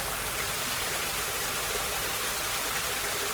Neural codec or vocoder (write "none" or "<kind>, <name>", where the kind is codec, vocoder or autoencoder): none